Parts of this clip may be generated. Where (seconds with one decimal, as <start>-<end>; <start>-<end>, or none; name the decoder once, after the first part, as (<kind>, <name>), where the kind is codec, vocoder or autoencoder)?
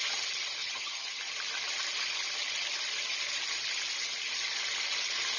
0.6-1.2 (vocoder, HiFi-GAN)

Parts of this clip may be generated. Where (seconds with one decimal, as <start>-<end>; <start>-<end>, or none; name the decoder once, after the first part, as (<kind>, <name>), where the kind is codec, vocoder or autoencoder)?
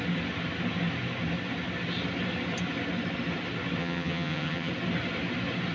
3.8-4.7 (vocoder, HiFi-GAN)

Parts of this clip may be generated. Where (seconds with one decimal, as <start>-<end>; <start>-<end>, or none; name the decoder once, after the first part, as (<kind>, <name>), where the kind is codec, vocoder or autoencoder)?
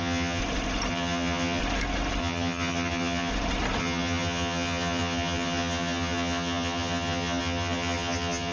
0.0-0.4 (vocoder, HiFi-GAN); 0.9-1.6; 2.2-3.3; 3.8-8.5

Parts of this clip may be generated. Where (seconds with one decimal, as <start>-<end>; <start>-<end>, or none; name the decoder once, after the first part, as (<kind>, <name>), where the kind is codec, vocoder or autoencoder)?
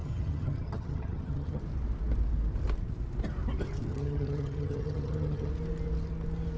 0.0-1.6 (vocoder, HiFi-GAN); 3.9-5.5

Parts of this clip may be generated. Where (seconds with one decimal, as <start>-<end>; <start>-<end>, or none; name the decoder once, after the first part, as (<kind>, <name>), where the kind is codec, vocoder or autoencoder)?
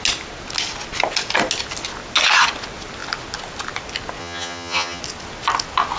4.2-5.0 (vocoder, HiFi-GAN)